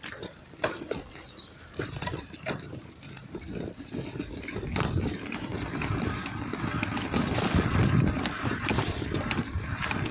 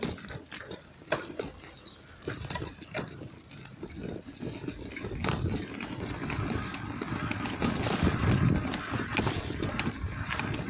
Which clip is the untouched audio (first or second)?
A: second